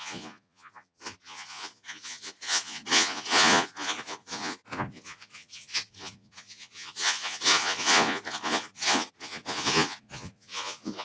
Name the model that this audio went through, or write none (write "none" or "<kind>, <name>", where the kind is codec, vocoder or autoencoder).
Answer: vocoder, Vocos